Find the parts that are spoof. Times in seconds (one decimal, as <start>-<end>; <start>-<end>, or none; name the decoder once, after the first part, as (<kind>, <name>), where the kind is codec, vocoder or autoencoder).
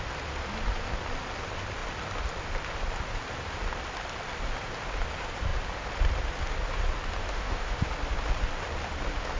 7.2-7.8 (autoencoder, DAC-VAE)